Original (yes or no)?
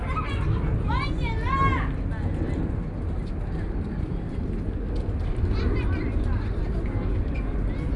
yes